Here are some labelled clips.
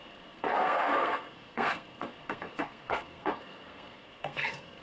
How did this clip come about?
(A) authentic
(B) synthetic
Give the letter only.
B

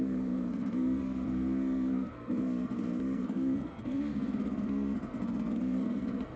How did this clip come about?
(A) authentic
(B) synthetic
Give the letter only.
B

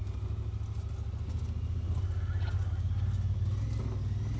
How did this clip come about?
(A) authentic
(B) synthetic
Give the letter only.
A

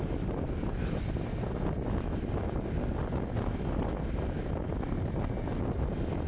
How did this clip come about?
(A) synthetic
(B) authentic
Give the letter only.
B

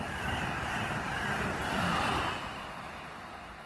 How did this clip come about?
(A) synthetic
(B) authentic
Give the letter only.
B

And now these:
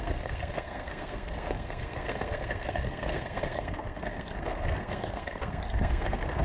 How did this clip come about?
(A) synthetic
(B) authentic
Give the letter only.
A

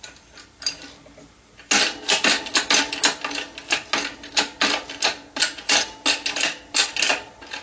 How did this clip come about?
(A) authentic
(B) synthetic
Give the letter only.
A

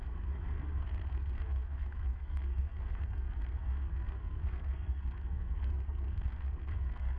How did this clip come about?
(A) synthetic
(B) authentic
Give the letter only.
A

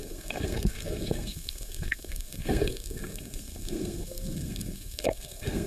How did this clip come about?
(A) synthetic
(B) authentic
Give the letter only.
A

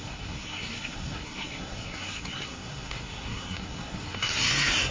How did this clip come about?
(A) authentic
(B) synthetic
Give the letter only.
B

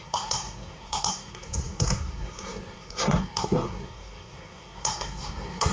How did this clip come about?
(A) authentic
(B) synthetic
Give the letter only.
B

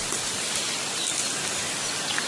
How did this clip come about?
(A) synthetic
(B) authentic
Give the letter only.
B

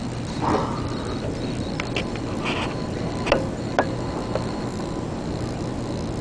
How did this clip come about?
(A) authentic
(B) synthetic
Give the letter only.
A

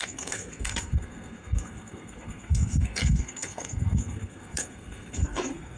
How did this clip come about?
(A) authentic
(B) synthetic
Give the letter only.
B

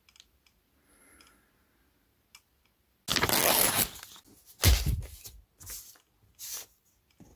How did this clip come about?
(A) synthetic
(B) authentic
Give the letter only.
B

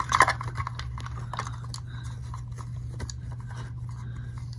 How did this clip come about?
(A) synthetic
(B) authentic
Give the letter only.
B